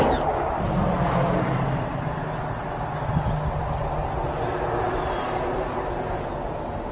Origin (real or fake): real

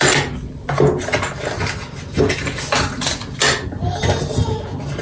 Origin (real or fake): real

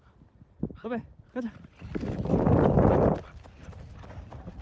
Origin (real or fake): real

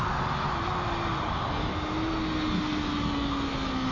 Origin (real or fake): real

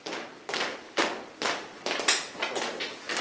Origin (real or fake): real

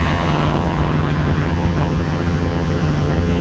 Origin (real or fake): fake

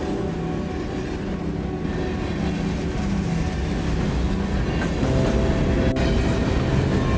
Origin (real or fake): real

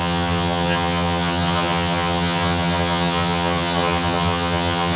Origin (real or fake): fake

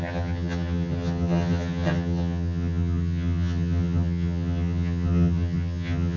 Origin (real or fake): fake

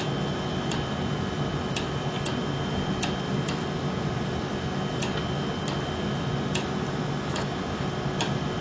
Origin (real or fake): real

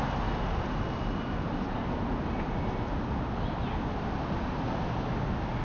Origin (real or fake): real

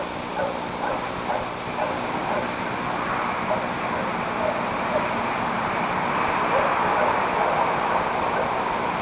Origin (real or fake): real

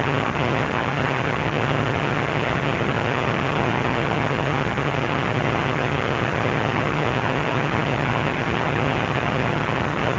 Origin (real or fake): fake